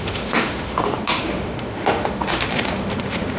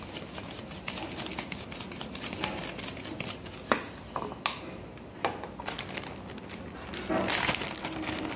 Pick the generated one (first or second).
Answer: first